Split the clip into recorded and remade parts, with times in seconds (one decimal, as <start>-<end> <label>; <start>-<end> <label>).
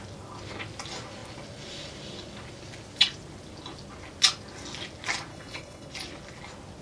0.0-5.3 recorded; 5.3-5.9 remade; 5.9-6.8 recorded